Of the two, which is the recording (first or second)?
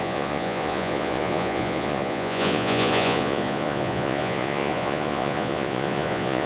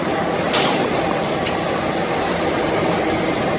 second